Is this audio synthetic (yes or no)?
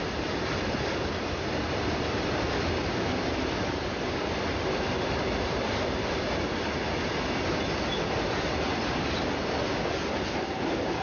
no